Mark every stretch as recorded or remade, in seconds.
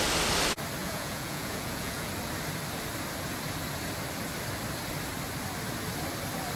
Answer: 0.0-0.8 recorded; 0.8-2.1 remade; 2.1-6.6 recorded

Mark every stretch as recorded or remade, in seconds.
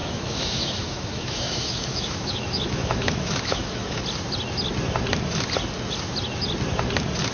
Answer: 0.0-4.0 remade; 4.0-7.3 recorded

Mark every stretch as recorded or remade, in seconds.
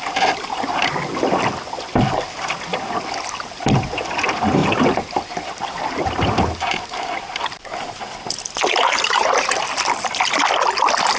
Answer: 0.0-4.6 recorded; 4.6-8.0 remade; 8.0-8.7 recorded; 8.7-9.6 remade; 9.6-11.2 recorded